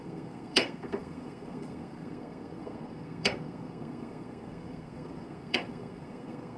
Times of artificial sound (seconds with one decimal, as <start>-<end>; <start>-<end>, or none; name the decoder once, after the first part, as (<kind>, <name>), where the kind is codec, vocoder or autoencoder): 0.0-6.6 (codec, SNAC)